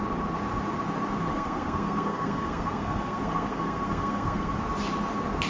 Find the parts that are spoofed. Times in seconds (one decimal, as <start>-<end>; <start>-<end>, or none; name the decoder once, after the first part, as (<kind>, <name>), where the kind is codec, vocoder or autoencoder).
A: 1.3-4.6 (codec, SNAC)